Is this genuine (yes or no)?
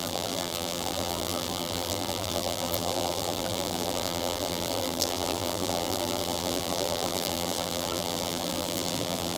no